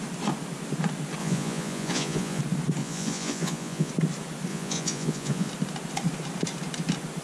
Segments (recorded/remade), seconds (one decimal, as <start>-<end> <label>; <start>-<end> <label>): 0.0-1.2 recorded; 1.2-2.4 remade; 2.4-2.8 recorded; 2.8-3.9 remade; 3.9-4.5 recorded; 4.5-5.5 remade; 5.5-7.2 recorded